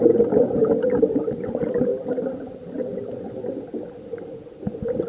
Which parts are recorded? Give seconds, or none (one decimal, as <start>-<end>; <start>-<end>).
0.0-5.1